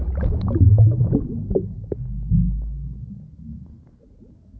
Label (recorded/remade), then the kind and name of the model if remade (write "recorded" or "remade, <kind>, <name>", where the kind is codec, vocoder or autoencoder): recorded